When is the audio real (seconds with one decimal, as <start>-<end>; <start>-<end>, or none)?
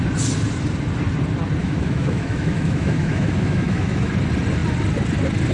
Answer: 0.0-1.6; 4.1-5.5